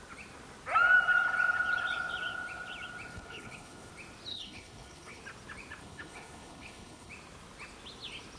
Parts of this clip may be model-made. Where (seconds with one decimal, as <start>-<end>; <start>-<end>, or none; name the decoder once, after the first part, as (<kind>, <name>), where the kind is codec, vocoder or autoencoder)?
3.1-3.9 (codec, HILCodec); 4.3-5.2; 5.8-7.1